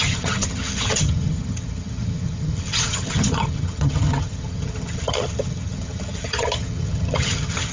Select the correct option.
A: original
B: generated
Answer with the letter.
B